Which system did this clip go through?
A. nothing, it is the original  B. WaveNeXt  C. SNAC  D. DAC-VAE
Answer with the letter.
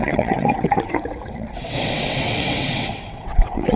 B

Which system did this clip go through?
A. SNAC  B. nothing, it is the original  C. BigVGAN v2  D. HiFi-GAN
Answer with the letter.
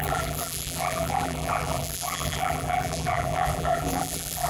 C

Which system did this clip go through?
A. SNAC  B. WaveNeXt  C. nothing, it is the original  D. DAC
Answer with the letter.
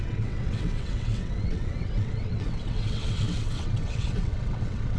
B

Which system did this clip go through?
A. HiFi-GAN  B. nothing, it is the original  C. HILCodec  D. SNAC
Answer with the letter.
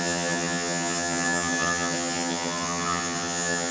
A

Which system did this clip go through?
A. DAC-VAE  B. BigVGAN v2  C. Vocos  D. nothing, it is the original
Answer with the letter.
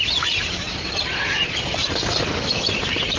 D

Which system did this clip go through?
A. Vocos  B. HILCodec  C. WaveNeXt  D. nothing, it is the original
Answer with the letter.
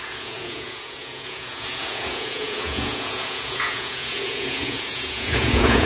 A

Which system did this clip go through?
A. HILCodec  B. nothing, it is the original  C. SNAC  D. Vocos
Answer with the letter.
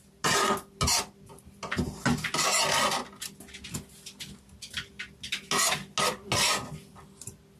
B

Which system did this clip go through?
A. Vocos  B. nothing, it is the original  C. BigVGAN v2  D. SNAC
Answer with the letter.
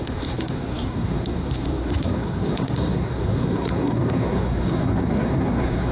D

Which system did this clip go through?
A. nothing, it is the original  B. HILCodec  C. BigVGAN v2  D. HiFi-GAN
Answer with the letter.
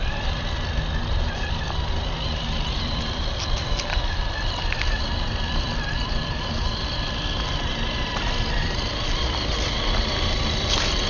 C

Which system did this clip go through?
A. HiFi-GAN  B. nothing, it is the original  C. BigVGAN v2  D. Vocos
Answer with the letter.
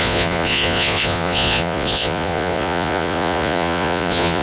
D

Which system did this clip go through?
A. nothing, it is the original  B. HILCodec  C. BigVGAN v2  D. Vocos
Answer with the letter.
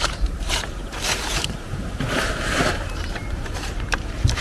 C